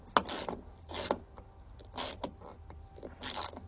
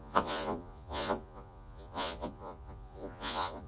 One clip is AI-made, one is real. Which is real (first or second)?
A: first